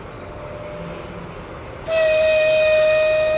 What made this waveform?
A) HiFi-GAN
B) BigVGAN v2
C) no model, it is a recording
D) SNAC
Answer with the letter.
C